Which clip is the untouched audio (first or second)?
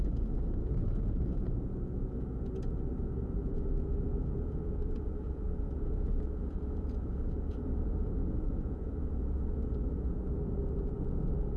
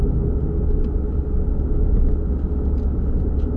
second